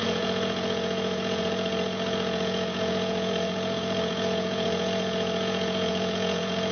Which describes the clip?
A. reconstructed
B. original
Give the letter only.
A